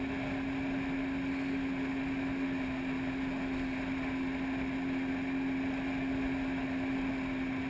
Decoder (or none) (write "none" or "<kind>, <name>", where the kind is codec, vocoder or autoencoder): none